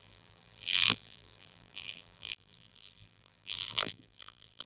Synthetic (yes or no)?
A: yes